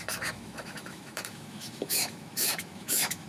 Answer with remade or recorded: remade